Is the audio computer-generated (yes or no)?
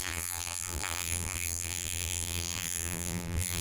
yes